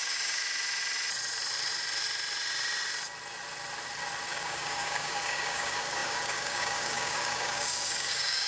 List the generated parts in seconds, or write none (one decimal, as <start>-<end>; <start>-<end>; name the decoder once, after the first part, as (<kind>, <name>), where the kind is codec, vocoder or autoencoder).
0.0-0.4 (codec, DAC); 4.3-8.5